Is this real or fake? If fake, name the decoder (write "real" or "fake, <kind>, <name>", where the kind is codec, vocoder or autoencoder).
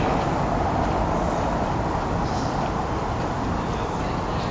real